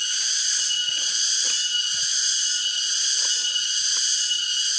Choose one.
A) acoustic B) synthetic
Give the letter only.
A